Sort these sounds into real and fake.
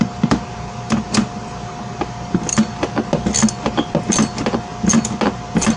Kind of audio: real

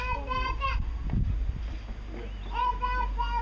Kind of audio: real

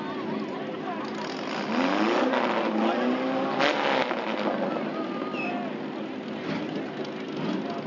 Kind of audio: real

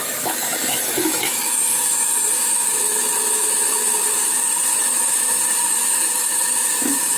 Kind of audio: fake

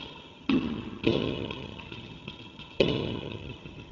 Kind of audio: fake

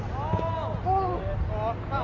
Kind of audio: real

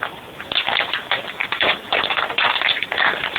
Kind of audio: real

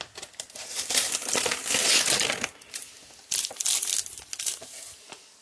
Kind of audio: real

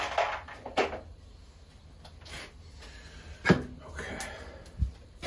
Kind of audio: real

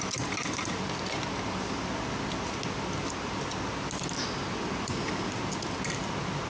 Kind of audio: real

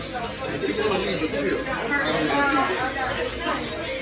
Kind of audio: real